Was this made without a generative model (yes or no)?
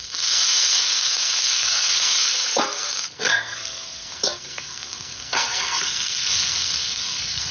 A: no